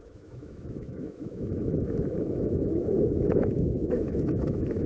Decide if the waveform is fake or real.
fake